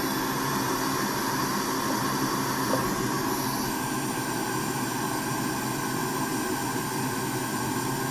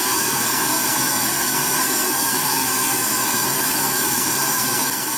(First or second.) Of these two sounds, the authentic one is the first